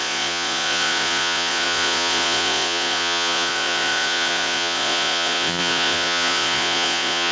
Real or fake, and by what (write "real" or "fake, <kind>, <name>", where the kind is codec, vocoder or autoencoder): fake, vocoder, Vocos